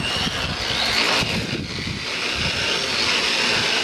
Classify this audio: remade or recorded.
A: recorded